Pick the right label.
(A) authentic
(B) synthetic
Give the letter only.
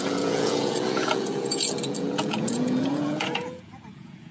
B